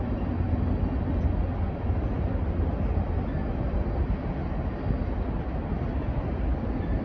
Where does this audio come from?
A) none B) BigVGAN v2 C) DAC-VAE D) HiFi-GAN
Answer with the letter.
A